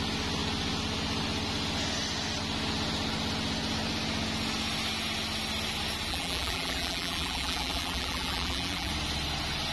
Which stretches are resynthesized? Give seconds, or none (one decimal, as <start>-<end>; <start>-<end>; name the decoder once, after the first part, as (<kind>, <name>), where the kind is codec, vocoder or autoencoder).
6.1-8.9 (vocoder, BigVGAN v2)